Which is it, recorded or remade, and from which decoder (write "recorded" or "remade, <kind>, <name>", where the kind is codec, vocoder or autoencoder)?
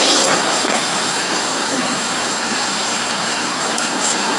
remade, codec, SNAC